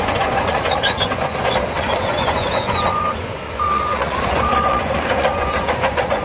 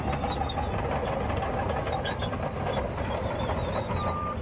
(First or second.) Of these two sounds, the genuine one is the second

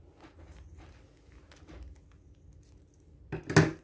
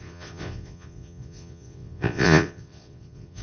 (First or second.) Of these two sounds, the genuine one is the first